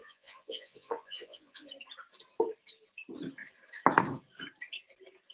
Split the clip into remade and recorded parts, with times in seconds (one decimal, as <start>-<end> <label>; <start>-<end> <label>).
0.0-1.7 remade; 1.7-5.3 recorded